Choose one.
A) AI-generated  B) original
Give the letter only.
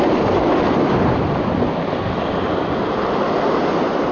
B